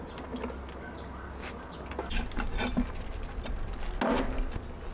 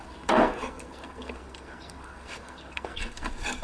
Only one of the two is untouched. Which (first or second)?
first